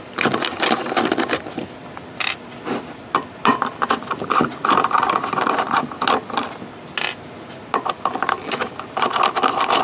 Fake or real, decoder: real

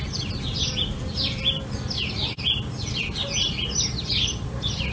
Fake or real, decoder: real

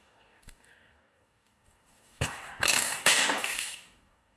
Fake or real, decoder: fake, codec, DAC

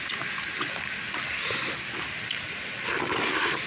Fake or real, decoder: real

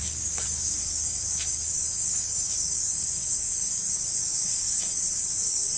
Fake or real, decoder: fake, codec, DAC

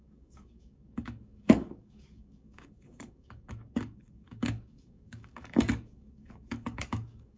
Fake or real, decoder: fake, codec, DAC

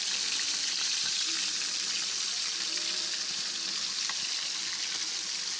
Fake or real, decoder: real